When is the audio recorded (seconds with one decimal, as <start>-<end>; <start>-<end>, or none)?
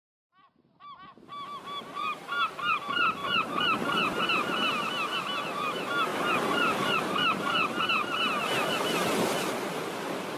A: 0.0-10.4